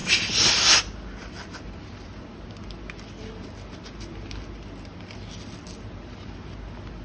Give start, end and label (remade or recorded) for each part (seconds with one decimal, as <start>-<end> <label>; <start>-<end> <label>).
0.0-7.0 recorded

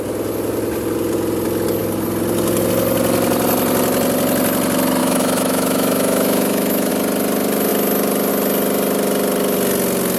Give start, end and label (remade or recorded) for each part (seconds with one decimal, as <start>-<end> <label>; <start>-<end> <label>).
0.0-5.0 recorded; 5.0-6.9 remade; 6.9-10.2 recorded

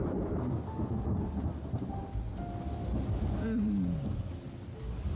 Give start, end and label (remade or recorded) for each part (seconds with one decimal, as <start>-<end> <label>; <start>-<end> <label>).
0.0-5.2 recorded

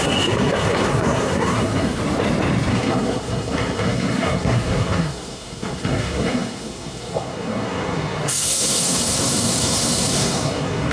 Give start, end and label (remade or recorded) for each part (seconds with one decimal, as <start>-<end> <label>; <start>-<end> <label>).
0.0-2.0 remade; 2.0-2.7 recorded; 2.7-10.9 remade

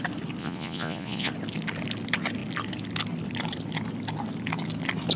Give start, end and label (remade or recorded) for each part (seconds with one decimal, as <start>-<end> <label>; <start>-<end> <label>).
0.0-0.4 recorded; 0.4-1.3 remade; 1.3-5.2 recorded

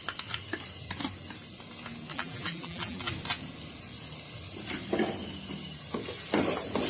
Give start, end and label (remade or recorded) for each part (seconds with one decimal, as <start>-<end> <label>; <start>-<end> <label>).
0.0-2.1 recorded; 2.1-3.1 remade; 3.1-6.9 recorded

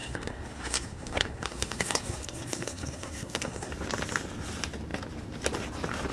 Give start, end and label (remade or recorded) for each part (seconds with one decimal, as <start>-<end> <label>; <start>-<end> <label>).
0.0-3.7 remade; 3.7-6.1 recorded

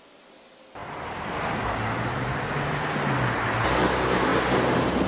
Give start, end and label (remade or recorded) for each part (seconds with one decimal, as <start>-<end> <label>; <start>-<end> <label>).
0.0-5.1 recorded